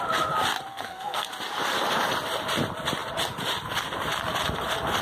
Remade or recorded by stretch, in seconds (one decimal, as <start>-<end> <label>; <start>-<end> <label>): 0.0-0.7 recorded; 0.7-1.3 remade; 1.3-5.0 recorded